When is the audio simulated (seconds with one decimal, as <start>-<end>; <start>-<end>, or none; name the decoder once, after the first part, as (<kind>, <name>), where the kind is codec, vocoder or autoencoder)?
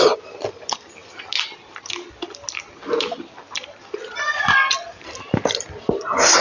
none